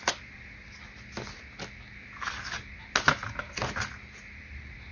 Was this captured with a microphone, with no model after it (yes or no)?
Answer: yes